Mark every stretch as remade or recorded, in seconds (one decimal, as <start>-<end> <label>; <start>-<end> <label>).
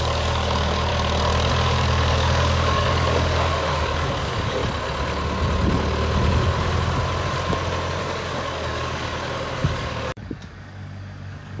0.0-0.9 remade; 0.9-1.5 recorded; 1.5-4.6 remade; 4.6-8.0 recorded; 8.0-11.6 remade